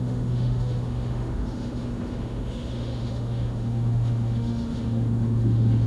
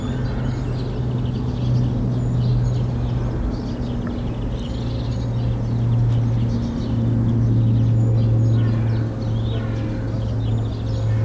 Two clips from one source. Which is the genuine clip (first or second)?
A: second